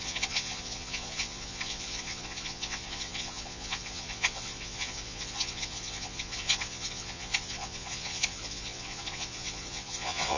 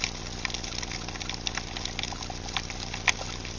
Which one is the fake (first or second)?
first